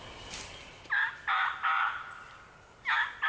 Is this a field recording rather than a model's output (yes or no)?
yes